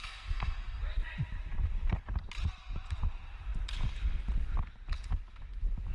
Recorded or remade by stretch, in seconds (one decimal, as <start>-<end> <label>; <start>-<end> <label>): 0.0-0.8 remade; 0.8-5.9 recorded